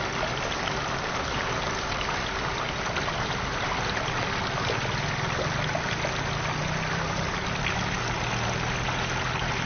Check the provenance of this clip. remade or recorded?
recorded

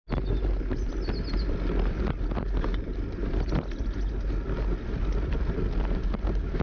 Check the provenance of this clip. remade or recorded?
recorded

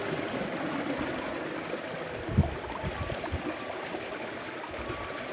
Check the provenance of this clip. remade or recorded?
recorded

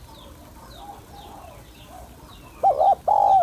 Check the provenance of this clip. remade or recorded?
remade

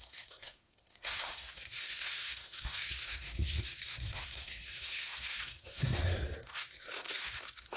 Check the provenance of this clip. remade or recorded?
remade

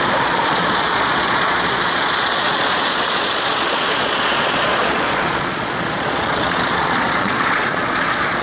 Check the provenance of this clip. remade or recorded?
remade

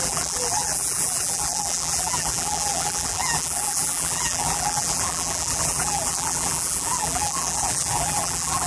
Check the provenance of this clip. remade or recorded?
remade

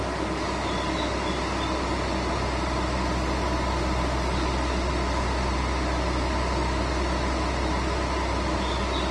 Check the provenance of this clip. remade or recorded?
recorded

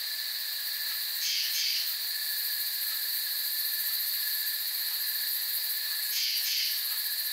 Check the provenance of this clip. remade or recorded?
recorded